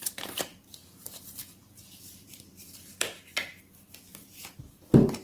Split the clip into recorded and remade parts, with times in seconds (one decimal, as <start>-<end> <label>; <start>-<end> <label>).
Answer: 0.0-0.5 recorded; 0.5-3.6 remade; 3.6-4.1 recorded; 4.1-4.6 remade; 4.6-5.2 recorded